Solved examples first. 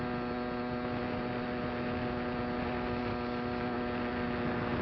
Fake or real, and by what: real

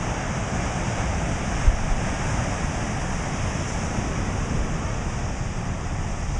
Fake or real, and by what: real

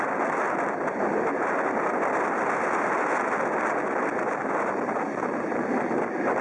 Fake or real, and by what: real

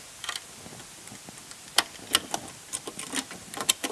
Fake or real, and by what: real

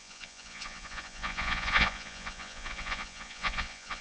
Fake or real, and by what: fake, vocoder, Vocos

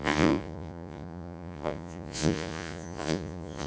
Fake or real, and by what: fake, vocoder, Vocos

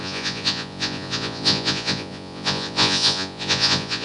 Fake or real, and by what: fake, vocoder, Vocos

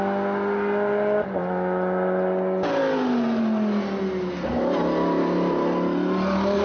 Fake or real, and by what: real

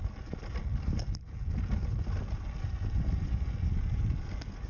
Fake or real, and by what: real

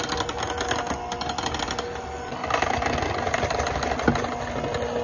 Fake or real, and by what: real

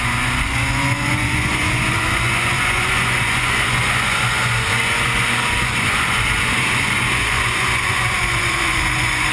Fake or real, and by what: fake, vocoder, Vocos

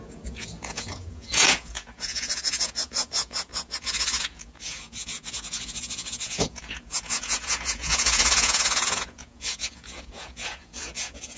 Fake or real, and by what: fake, vocoder, Vocos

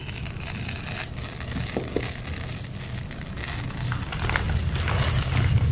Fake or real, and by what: real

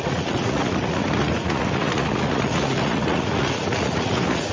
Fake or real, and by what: fake, vocoder, Vocos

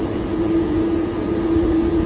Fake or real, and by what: fake, vocoder, Vocos